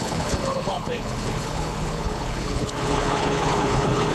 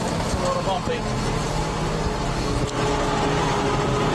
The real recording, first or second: second